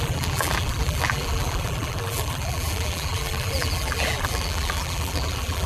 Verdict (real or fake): fake